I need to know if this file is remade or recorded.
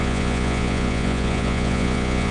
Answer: remade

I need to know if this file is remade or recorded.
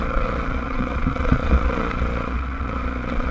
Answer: remade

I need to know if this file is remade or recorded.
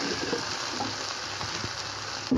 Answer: recorded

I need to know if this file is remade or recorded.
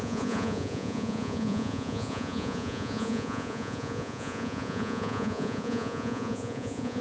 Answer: remade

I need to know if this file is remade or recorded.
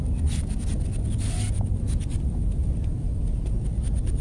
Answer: recorded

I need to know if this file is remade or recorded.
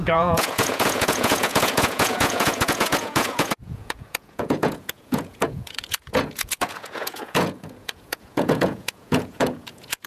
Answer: remade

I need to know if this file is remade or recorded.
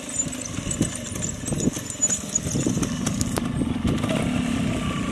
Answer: recorded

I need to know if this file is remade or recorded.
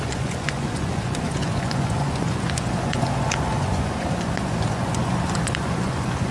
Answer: remade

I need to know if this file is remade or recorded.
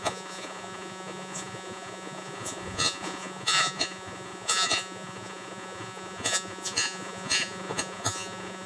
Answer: remade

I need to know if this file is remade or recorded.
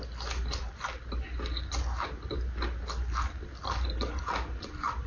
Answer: recorded